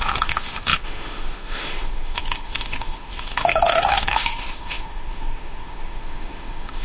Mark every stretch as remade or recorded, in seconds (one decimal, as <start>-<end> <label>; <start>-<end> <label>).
0.0-6.8 remade